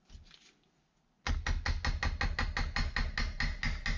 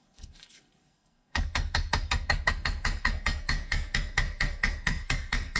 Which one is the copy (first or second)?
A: second